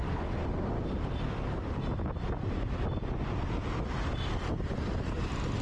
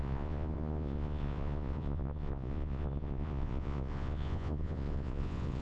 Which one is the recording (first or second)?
first